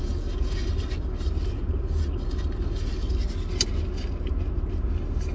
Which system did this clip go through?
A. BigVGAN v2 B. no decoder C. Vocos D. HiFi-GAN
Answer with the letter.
B